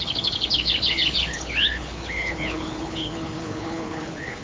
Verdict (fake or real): fake